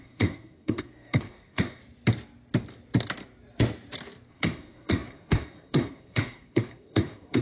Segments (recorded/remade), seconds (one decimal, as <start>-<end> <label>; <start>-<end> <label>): 0.0-1.8 remade; 1.8-4.3 recorded; 4.3-7.4 remade